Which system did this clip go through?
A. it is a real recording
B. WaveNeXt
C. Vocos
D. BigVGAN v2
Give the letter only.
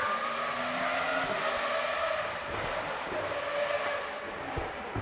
A